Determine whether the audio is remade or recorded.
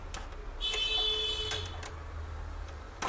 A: recorded